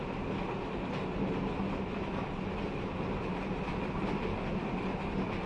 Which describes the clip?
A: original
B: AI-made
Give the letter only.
A